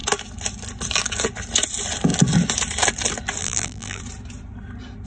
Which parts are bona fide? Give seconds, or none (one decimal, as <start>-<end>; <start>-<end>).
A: 0.0-3.4; 4.0-5.1